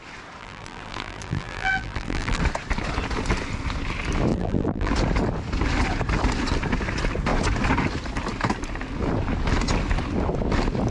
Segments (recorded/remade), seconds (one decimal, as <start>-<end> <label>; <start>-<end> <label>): 0.0-0.4 recorded; 0.4-2.4 remade; 2.4-4.3 recorded; 4.3-4.9 remade; 4.9-10.9 recorded